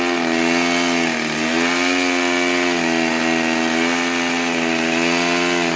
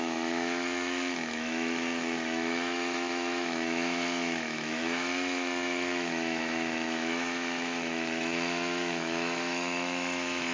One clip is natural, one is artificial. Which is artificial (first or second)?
second